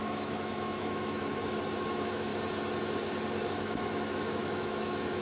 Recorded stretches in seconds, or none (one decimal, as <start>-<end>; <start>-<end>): 1.3-1.9; 2.3-3.5